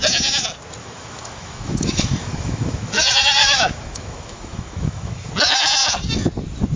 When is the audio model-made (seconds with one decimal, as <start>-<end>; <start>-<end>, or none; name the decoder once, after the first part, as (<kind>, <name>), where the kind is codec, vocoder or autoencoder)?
0.8-3.0 (autoencoder, DAC-VAE); 3.4-5.3